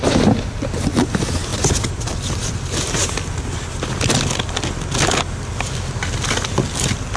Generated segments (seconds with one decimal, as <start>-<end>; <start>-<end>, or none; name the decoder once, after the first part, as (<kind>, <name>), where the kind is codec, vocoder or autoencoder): none